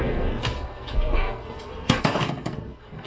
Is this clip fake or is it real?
fake